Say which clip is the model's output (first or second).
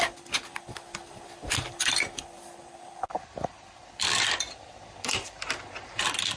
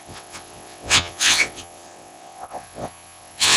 second